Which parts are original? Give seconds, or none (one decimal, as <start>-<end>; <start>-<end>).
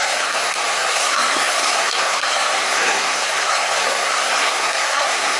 none